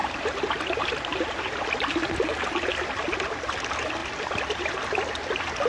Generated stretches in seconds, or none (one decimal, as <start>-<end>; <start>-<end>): 4.0-4.7